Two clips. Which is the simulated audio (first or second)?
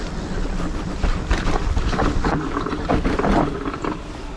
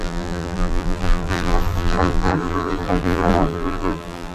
second